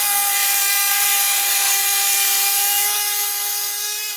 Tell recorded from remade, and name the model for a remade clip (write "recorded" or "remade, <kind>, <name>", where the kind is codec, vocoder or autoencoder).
remade, codec, SNAC